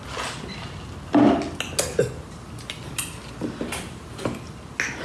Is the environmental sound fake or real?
real